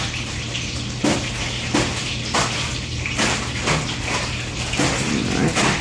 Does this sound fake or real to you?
real